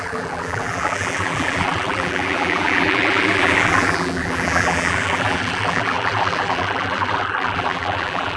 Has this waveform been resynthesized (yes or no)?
yes